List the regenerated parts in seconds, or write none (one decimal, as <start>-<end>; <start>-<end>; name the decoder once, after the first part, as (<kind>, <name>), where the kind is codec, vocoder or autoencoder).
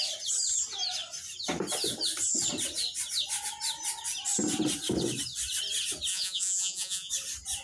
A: 6.1-7.1 (vocoder, Vocos)